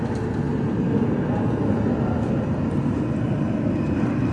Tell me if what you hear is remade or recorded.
recorded